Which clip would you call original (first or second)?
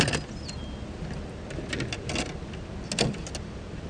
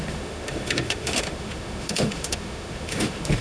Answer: first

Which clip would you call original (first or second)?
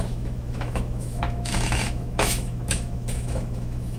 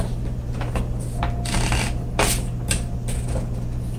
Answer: second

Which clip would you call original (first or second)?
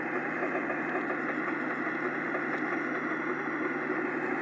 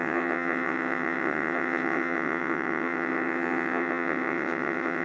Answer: first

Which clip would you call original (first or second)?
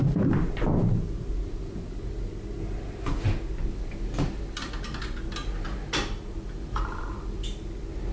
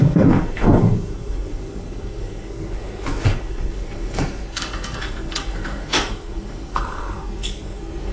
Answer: first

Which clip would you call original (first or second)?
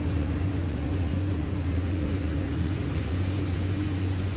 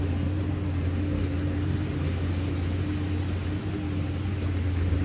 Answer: second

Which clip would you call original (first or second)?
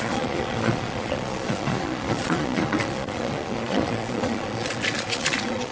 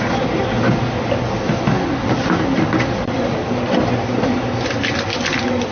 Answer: second